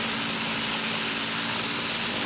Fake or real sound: real